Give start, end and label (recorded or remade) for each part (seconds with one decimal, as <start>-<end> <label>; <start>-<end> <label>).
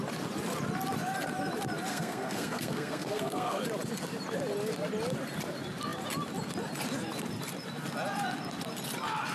0.0-1.9 recorded; 1.9-3.6 remade; 3.6-9.3 recorded